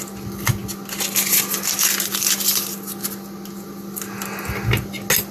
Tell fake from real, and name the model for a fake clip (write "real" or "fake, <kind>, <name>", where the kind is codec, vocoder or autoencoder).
real